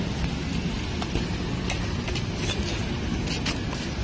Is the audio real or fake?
real